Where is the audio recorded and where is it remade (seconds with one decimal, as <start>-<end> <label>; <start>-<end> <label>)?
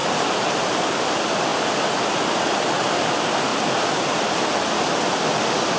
0.0-0.9 remade; 0.9-5.8 recorded